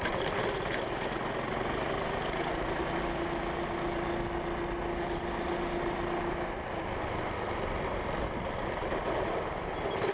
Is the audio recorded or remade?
recorded